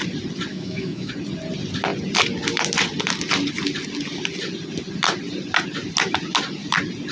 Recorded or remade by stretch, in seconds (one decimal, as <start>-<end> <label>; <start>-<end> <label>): 0.0-0.5 recorded; 0.5-1.1 remade; 1.1-7.1 recorded